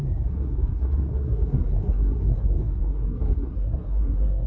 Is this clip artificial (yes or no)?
yes